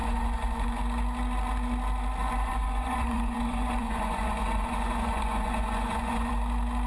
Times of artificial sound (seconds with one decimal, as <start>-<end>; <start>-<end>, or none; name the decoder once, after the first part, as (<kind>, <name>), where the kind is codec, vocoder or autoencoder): 0.0-0.8 (vocoder, Vocos); 2.2-6.3